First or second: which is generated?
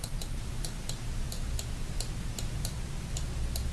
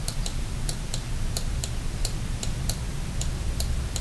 second